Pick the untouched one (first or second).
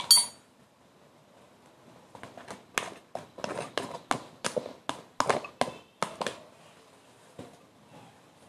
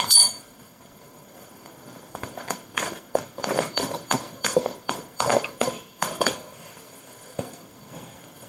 first